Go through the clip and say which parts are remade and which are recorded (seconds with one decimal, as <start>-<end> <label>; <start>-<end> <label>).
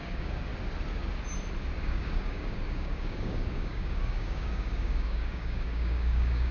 0.0-0.5 remade; 0.5-1.8 recorded; 1.8-6.5 remade